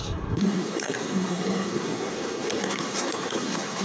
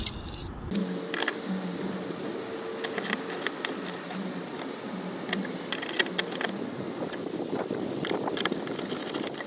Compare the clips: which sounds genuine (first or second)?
second